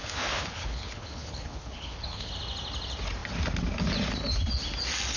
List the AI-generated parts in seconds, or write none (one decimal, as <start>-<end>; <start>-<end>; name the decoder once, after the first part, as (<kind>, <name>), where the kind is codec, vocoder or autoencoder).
0.0-2.3 (codec, HILCodec)